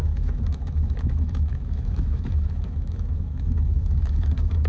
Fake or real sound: fake